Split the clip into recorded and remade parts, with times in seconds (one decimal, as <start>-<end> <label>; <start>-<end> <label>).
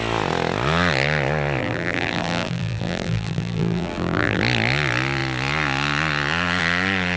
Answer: 0.0-1.6 recorded; 1.6-4.4 remade; 4.4-7.2 recorded